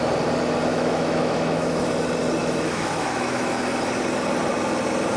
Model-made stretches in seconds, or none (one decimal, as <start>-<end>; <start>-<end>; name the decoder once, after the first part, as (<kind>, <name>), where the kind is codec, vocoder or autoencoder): 0.7-1.9 (autoencoder, DAC-VAE); 2.4-3.5